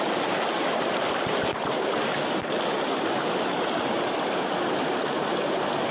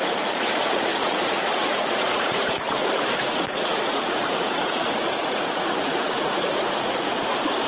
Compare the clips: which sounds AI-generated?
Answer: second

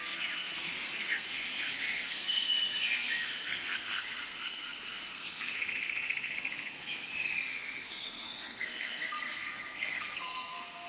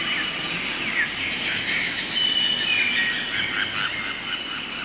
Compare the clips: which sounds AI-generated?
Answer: first